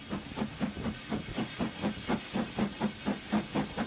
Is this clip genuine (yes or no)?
yes